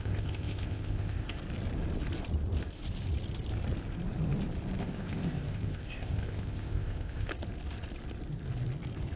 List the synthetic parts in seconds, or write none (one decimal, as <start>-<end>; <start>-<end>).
0.0-1.4; 4.8-7.3